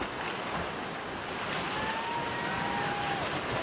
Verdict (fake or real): real